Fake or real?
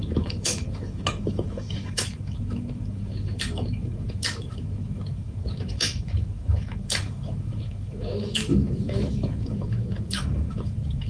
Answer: fake